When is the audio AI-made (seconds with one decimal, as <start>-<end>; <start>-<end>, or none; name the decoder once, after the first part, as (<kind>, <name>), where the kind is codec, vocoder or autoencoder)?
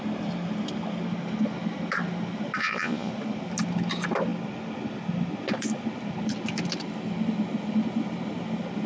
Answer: 2.6-3.1 (vocoder, Vocos)